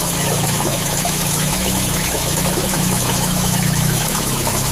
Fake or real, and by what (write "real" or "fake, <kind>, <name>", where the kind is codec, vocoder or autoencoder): fake, autoencoder, DAC-VAE